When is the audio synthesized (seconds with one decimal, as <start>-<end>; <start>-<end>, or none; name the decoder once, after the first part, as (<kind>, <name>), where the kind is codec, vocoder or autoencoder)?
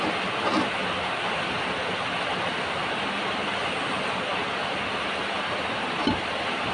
none